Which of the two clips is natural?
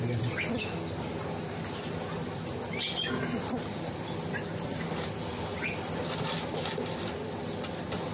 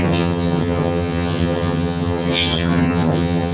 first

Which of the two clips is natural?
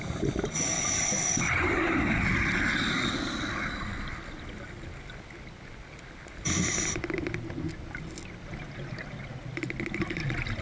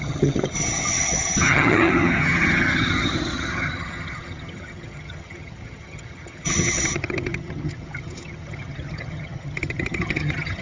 first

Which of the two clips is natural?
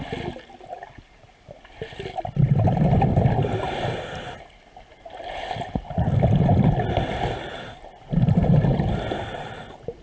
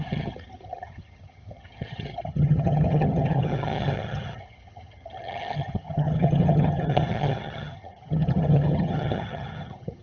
first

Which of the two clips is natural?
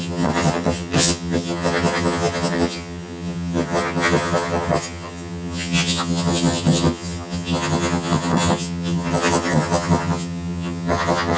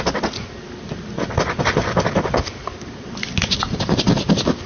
second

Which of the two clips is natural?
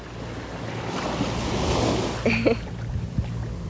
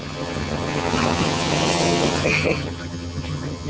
first